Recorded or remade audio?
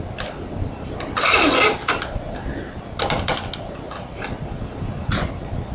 recorded